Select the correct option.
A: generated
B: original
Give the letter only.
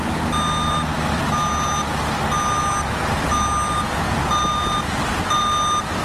B